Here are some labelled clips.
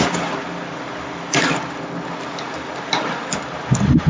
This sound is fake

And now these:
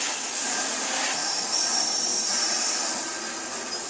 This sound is real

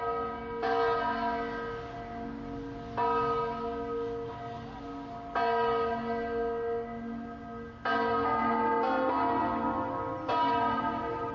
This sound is real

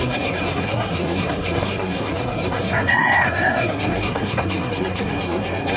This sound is fake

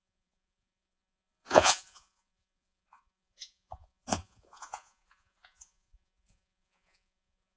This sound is fake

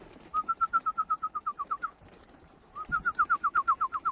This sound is fake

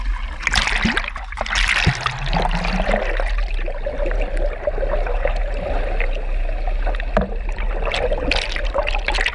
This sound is real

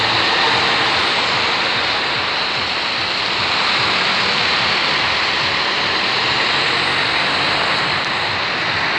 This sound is real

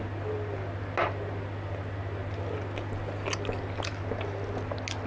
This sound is real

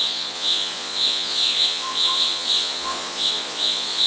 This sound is fake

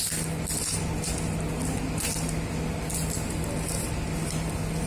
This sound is real